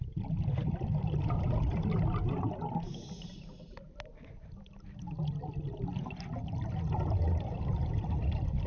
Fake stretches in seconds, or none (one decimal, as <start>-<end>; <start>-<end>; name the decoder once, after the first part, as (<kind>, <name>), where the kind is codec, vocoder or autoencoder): none